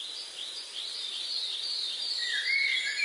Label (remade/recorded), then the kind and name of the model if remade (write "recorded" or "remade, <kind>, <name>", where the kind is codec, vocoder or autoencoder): remade, vocoder, BigVGAN v2